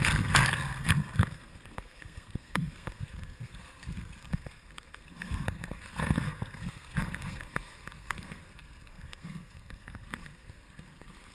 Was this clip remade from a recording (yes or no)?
yes